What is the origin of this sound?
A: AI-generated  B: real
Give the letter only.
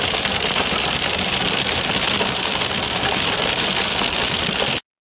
B